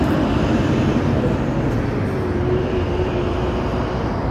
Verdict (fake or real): real